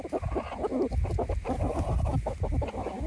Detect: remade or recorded recorded